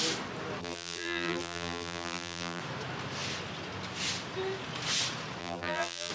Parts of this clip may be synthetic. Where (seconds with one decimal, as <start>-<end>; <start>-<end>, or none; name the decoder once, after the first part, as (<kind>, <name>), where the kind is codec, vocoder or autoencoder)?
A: 0.6-2.6 (vocoder, BigVGAN v2); 5.4-6.1